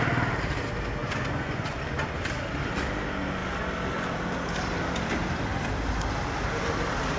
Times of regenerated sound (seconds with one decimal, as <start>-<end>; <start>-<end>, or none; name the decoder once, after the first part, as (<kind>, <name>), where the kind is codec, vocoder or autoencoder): 1.0-1.8 (vocoder, Vocos)